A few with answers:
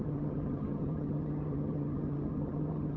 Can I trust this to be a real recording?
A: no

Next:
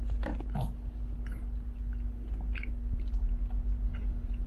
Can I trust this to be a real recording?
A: yes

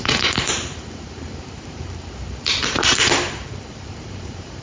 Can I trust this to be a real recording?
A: no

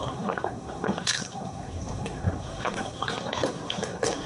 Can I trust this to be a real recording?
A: no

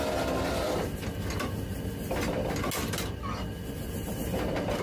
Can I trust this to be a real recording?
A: yes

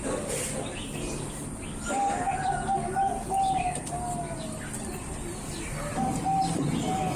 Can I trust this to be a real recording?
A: yes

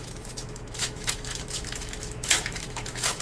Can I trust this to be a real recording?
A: no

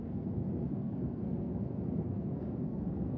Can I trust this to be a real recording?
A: no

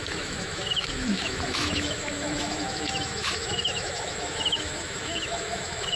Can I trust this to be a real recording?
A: no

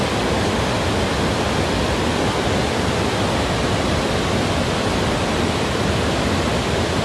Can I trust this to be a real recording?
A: yes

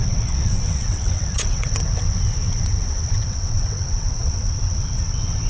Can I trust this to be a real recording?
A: no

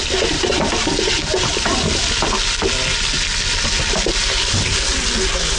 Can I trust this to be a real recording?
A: yes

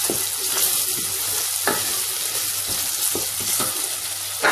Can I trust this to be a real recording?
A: yes